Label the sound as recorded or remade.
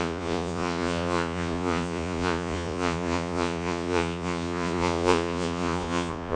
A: remade